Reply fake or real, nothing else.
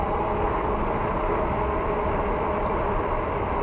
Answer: real